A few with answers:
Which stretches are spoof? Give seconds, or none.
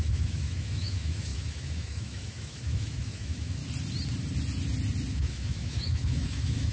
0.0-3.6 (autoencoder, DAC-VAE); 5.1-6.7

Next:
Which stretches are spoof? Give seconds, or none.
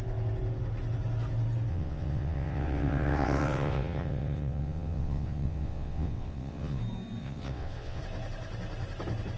1.7-6.8 (vocoder, WaveNeXt); 7.2-8.0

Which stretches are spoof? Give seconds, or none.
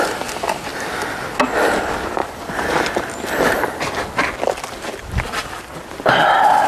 2.2-4.1 (vocoder, BigVGAN v2)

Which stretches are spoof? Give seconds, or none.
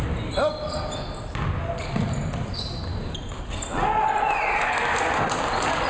none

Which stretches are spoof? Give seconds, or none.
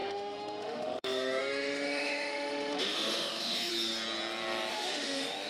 0.0-3.7 (autoencoder, DAC-VAE); 4.7-5.5